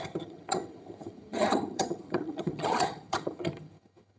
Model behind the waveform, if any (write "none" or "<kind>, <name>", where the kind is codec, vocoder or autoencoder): vocoder, HiFi-GAN